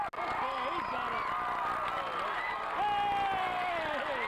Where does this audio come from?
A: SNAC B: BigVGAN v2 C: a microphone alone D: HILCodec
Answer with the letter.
C